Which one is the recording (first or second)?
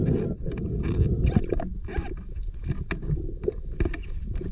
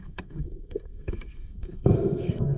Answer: first